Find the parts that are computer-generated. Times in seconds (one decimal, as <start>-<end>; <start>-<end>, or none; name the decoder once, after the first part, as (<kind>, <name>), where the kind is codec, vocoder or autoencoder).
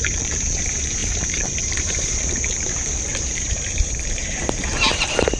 0.0-5.4 (vocoder, BigVGAN v2)